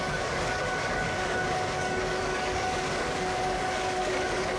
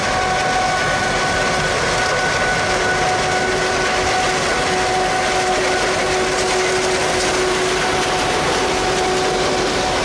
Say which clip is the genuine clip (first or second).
second